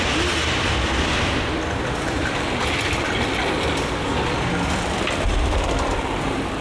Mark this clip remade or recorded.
recorded